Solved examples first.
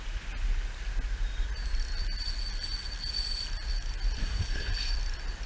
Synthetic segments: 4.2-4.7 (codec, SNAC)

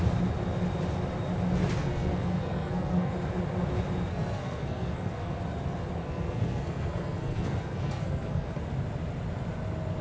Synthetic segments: 1.8-3.1 (codec, SNAC); 4.1-5.4; 6.0-8.6

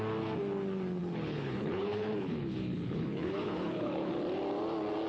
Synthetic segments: 1.0-4.1 (codec, HILCodec)

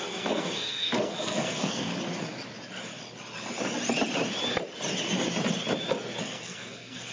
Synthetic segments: 0.0-1.9 (codec, SNAC); 6.2-7.1

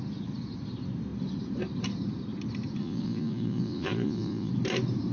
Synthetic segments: 2.8-4.5 (vocoder, Vocos)

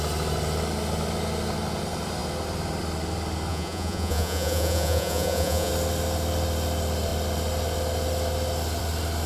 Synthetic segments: 3.5-5.7 (vocoder, Vocos)

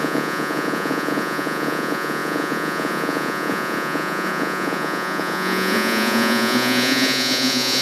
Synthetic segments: 0.0-7.8 (vocoder, Vocos)